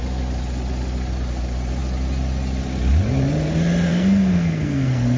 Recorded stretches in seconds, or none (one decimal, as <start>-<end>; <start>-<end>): 0.0-3.9